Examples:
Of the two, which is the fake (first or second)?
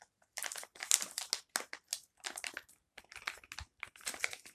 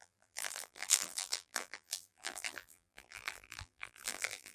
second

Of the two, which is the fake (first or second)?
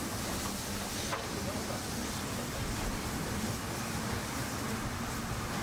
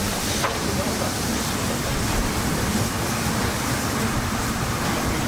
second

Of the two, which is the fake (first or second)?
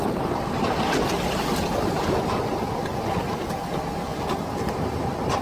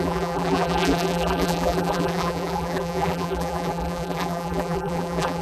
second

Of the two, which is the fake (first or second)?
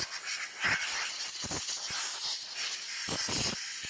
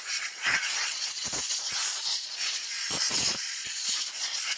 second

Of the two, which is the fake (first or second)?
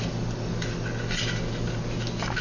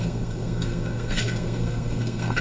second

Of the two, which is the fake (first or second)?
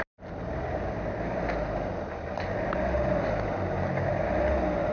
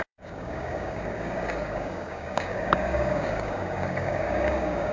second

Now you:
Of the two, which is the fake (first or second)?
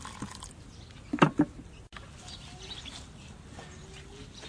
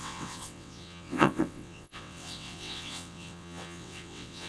second